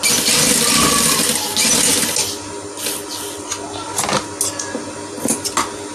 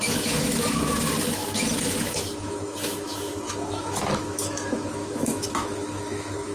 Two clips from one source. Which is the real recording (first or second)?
first